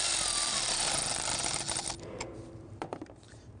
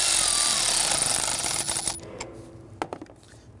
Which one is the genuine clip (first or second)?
second